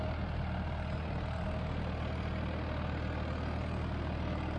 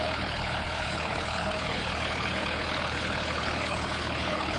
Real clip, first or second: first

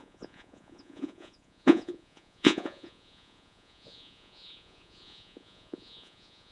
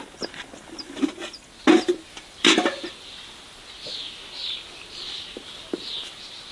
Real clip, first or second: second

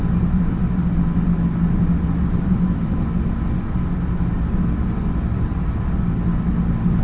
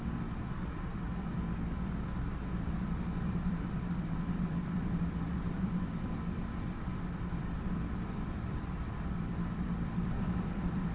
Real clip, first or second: first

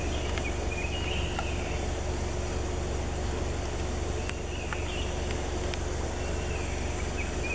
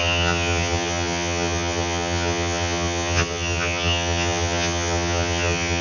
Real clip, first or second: first